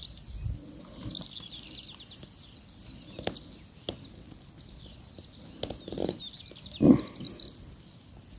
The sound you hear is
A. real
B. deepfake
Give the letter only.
A